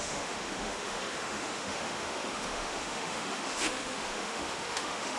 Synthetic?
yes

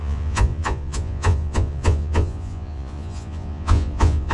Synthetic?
yes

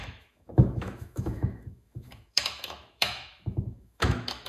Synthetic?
yes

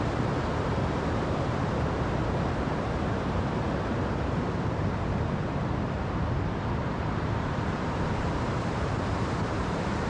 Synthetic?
yes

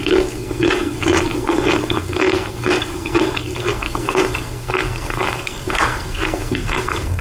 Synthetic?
yes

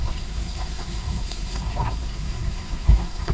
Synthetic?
yes